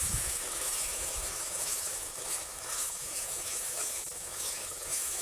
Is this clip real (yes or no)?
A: no